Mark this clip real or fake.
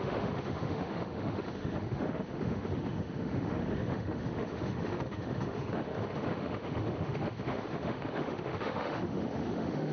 fake